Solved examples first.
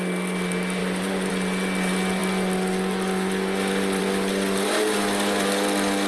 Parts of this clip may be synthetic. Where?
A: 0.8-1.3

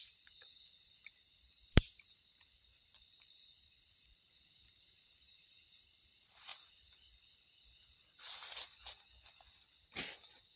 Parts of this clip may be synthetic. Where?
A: 0.0-6.5

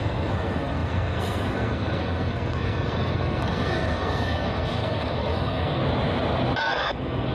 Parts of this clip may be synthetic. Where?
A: 0.0-5.8; 6.6-7.3

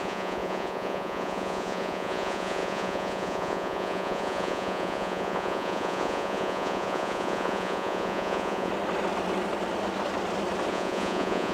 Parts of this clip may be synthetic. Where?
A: 0.0-8.7; 10.7-11.5

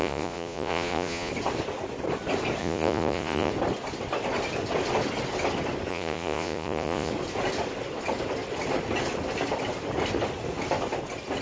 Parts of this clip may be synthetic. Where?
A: 0.0-1.3; 2.6-3.5; 5.9-7.1

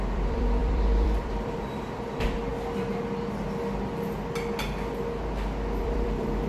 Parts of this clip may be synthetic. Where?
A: 0.0-2.5; 5.8-6.5